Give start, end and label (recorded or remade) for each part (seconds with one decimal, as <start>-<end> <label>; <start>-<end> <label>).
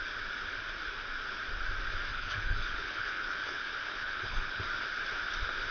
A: 0.0-2.1 recorded; 2.1-4.6 remade; 4.6-5.7 recorded